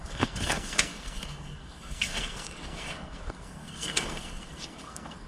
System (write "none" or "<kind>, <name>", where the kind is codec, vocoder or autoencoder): codec, SNAC